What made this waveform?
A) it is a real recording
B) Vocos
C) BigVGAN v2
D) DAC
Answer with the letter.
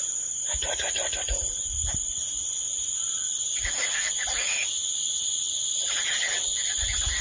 C